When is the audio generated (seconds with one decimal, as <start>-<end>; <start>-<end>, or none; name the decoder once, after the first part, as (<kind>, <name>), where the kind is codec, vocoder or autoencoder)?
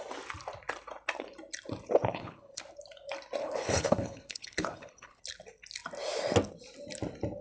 2.1-2.6 (codec, HILCodec); 3.4-5.2